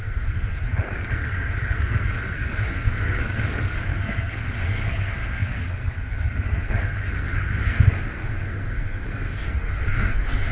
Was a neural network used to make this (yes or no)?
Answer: yes